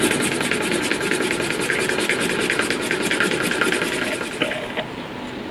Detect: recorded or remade recorded